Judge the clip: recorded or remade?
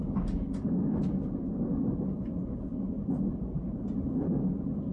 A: recorded